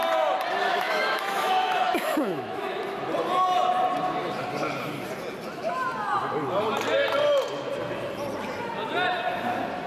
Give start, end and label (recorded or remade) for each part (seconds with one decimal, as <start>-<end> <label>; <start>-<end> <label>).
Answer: 0.0-0.6 recorded; 0.6-2.8 remade; 2.8-9.9 recorded